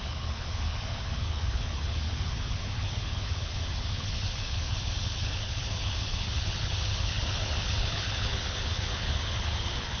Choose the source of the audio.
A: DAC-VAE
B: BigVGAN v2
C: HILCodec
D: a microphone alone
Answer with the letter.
C